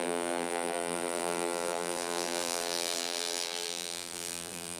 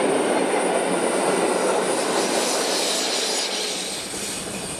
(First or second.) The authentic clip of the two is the second